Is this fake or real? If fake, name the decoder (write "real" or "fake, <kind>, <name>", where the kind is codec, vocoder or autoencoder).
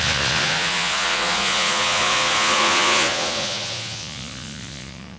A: fake, vocoder, Vocos